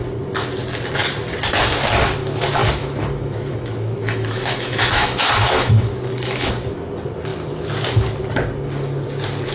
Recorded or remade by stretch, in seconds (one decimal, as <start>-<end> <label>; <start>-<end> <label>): 0.0-2.6 recorded; 2.6-6.5 remade; 6.5-9.5 recorded